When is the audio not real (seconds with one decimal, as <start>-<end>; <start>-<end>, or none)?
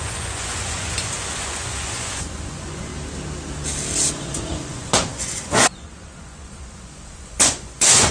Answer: 0.0-2.9; 4.1-8.1